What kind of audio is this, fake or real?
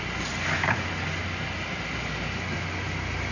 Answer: real